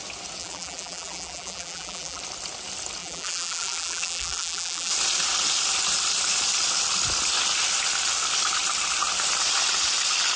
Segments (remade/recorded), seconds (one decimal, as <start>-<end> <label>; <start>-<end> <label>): 0.0-0.4 recorded; 0.4-2.2 remade; 2.2-3.0 recorded; 3.0-4.9 remade; 4.9-10.4 recorded